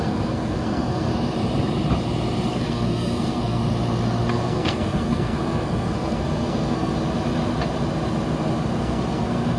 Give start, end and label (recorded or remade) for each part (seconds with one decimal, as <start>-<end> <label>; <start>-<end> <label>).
0.0-1.1 remade; 1.1-2.5 recorded; 2.5-3.6 remade; 3.6-4.3 recorded; 4.3-6.9 remade; 6.9-8.8 recorded; 8.8-9.6 remade